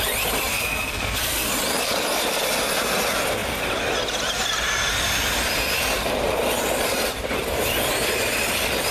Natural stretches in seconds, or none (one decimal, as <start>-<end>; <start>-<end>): 0.0-0.5; 1.5-8.9